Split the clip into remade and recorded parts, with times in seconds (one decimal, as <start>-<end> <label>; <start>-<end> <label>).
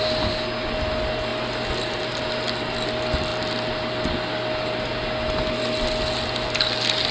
0.0-7.1 recorded